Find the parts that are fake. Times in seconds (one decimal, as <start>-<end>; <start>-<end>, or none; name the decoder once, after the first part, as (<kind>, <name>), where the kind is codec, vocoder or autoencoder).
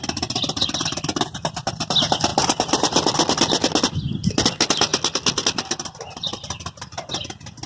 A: none